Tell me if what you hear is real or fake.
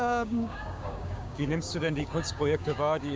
fake